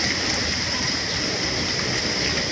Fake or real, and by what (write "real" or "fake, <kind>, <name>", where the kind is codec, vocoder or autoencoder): real